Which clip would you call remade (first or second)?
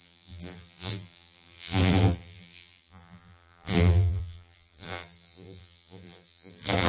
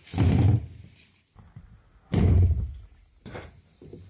first